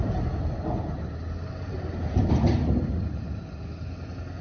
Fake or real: real